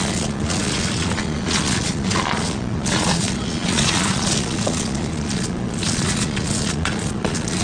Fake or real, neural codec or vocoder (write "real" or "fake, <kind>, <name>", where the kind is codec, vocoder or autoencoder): fake, vocoder, Vocos